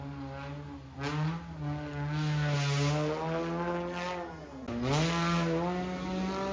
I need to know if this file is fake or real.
real